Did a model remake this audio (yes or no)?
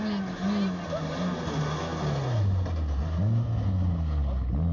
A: no